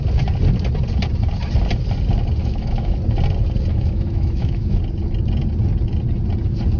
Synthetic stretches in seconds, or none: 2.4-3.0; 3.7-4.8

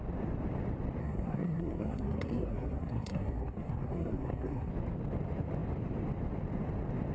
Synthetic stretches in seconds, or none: 1.0-4.7

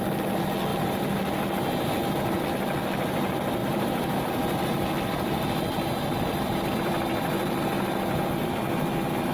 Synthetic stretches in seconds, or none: 3.6-6.7

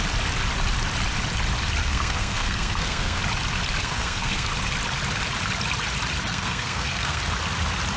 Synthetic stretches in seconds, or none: 1.8-3.2; 3.8-4.5; 6.3-7.2